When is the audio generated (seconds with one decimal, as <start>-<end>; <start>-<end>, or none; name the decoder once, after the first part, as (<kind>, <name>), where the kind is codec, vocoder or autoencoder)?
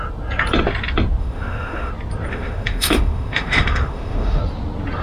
1.2-1.9 (autoencoder, DAC-VAE); 2.3-4.4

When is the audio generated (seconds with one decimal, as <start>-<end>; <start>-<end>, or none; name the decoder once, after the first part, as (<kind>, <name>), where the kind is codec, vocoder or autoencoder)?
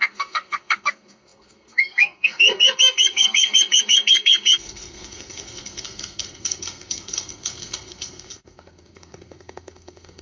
0.0-10.2 (codec, SNAC)